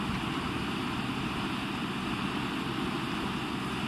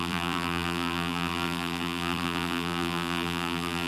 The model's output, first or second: second